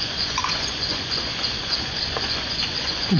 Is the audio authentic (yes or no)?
no